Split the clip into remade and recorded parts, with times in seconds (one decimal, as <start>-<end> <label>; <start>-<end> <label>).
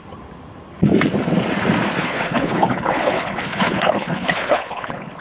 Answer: 0.0-2.0 recorded; 2.0-5.2 remade